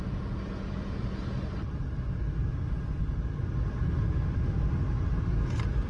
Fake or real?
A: real